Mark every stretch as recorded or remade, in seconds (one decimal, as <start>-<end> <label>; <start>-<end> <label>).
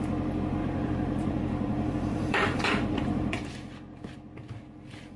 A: 0.0-0.6 recorded; 0.6-3.5 remade; 3.5-5.2 recorded